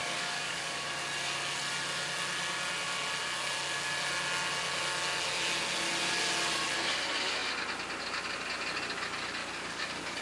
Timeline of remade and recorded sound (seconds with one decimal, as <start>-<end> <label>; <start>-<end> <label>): 0.0-0.8 remade; 0.8-9.4 recorded; 9.4-10.2 remade